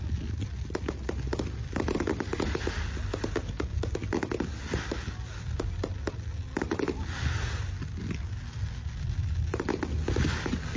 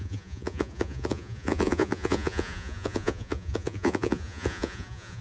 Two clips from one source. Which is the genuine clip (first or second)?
first